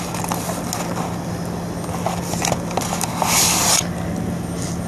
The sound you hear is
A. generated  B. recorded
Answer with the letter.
B